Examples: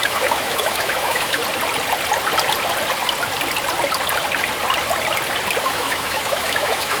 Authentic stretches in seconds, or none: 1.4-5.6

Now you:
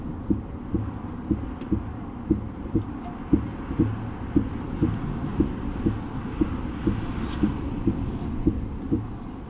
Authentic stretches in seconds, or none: 0.0-9.5